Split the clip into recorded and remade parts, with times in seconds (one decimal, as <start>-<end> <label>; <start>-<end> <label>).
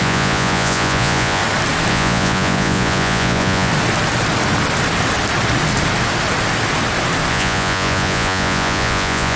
0.0-1.4 remade; 1.4-1.9 recorded; 1.9-3.7 remade; 3.7-7.3 recorded; 7.3-9.4 remade